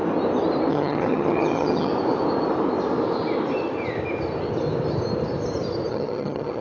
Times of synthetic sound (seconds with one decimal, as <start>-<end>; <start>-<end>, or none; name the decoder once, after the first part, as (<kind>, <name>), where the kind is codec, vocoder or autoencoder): 0.7-1.9 (vocoder, HiFi-GAN); 5.9-6.6